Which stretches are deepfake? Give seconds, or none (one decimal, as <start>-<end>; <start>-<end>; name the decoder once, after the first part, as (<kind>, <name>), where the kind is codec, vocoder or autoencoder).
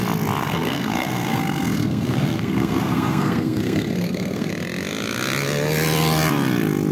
0.4-4.5 (codec, SNAC)